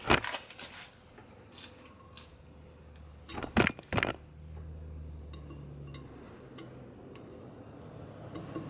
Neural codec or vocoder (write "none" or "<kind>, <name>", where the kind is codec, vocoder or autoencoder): none